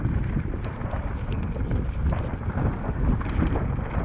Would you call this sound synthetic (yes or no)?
no